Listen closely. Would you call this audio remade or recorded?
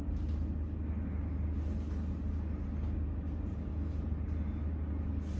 recorded